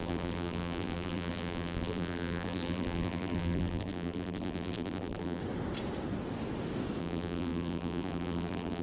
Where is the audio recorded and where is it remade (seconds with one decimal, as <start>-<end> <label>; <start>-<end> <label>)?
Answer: 0.0-5.4 remade; 5.4-7.0 recorded; 7.0-8.8 remade